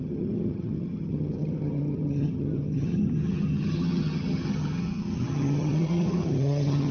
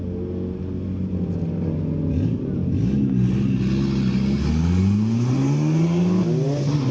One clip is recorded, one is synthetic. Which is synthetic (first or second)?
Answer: first